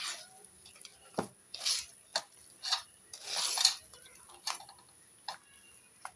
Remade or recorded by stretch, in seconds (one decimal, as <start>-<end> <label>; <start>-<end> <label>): 0.0-6.2 recorded